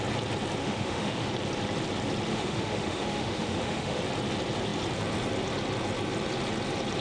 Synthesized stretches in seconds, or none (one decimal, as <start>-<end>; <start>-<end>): 0.6-1.3; 2.3-4.0